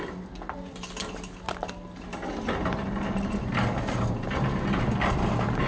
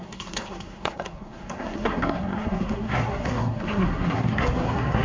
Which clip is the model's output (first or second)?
second